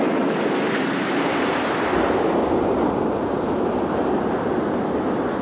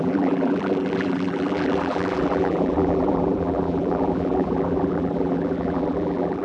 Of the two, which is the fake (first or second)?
second